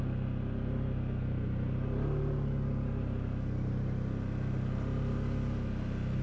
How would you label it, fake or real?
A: real